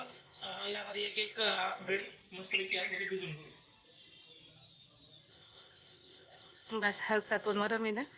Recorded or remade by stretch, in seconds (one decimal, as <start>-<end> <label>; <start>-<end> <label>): 0.0-2.0 remade; 2.0-5.3 recorded; 5.3-8.2 remade